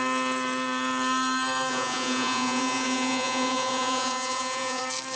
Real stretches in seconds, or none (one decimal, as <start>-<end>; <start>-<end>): 0.0-1.7; 4.8-5.2